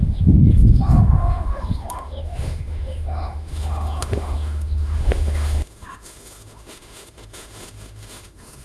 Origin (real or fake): fake